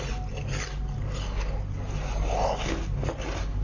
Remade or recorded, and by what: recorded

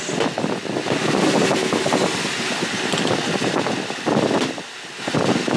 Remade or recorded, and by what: recorded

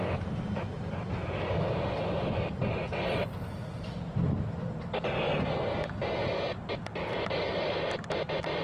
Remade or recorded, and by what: recorded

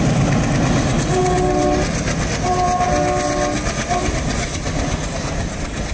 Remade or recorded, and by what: recorded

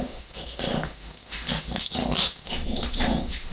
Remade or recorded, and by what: remade, autoencoder, DAC-VAE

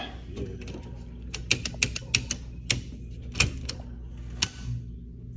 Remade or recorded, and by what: recorded